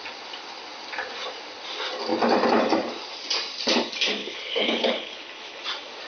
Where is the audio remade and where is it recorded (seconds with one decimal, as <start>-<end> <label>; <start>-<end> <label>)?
0.0-4.2 recorded; 4.2-5.6 remade; 5.6-6.1 recorded